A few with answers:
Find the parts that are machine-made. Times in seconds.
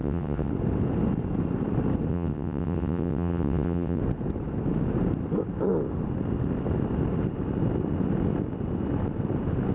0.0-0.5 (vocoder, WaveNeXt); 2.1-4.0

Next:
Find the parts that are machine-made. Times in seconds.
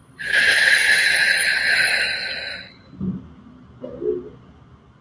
0.0-2.0 (vocoder, WaveNeXt)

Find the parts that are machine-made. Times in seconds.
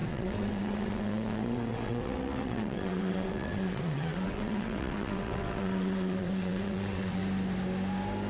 0.0-7.2 (vocoder, WaveNeXt)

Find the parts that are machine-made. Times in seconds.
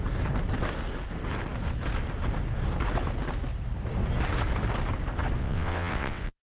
5.4-6.4 (vocoder, WaveNeXt)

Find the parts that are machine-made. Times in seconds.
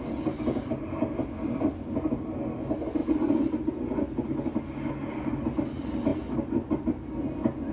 none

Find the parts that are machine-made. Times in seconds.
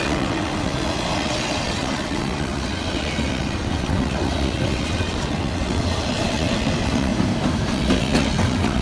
0.0-7.1 (vocoder, WaveNeXt); 7.7-8.8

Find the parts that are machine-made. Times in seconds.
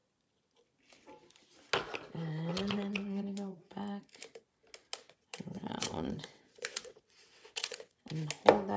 2.5-3.7 (vocoder, WaveNeXt); 5.0-8.1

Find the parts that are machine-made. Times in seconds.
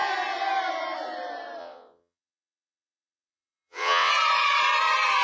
1.6-4.1 (vocoder, WaveNeXt)